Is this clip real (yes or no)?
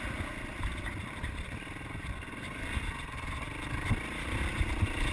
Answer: no